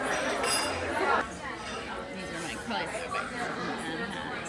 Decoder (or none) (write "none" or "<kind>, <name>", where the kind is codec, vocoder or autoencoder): none